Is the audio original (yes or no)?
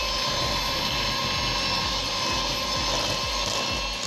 yes